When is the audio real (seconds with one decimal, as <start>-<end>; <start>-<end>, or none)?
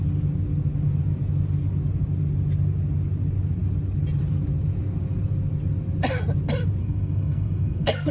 0.0-6.8